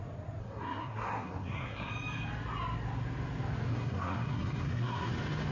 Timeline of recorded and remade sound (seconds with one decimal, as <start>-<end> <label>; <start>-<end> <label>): 0.0-0.4 recorded; 0.4-1.9 remade; 1.9-3.7 recorded; 3.7-5.1 remade; 5.1-5.5 recorded